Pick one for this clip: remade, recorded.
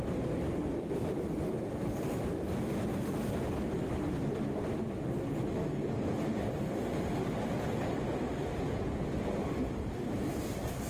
recorded